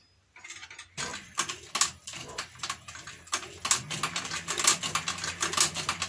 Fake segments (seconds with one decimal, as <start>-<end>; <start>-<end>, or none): none